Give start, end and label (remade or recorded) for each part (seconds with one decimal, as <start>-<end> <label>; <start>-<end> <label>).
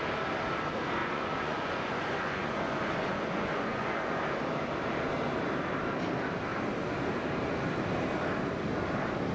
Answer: 0.0-1.0 recorded; 1.0-4.2 remade; 4.2-9.3 recorded